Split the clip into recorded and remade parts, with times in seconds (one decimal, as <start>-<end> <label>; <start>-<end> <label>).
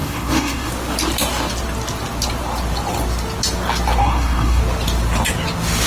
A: 0.0-0.7 remade; 0.7-4.0 recorded; 4.0-4.6 remade; 4.6-5.9 recorded